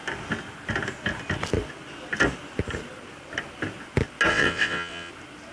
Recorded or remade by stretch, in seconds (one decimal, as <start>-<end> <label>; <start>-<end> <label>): 0.0-4.3 recorded; 4.3-5.1 remade; 5.1-5.5 recorded